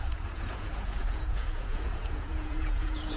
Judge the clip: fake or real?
fake